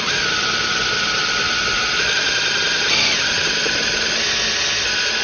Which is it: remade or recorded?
recorded